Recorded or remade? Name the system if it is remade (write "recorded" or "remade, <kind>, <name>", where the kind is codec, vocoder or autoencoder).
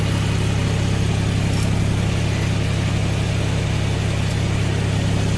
recorded